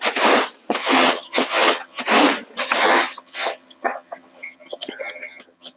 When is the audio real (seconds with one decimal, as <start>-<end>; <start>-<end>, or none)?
0.0-0.8; 2.0-2.6